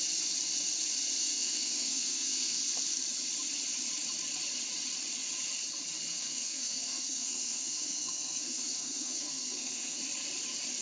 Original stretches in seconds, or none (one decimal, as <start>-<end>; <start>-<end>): 0.0-1.2; 2.6-6.1; 10.0-10.8